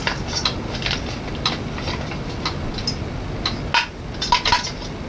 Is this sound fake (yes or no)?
no